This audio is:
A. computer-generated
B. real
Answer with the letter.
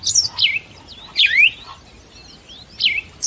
B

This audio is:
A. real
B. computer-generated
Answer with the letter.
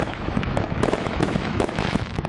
B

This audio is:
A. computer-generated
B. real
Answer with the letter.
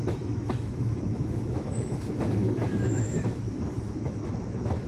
A